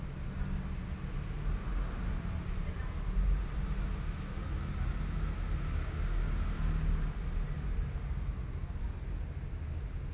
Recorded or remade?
recorded